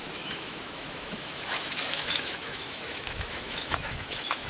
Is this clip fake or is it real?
fake